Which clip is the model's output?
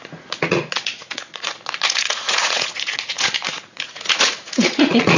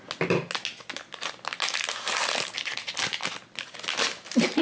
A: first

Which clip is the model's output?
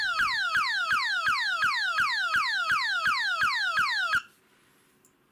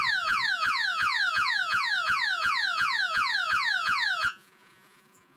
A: second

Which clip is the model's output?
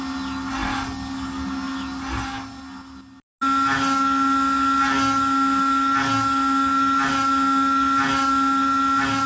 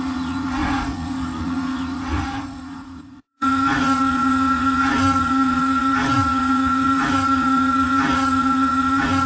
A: second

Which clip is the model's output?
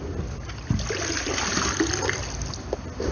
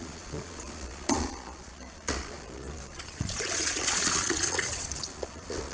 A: second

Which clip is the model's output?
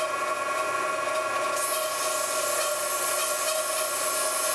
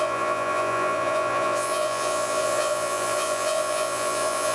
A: second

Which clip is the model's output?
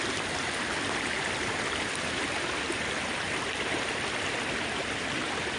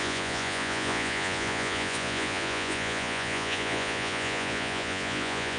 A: second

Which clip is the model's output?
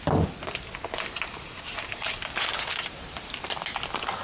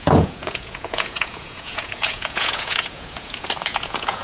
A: second